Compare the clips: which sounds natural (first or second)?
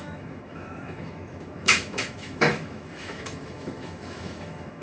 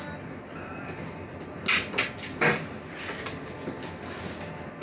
second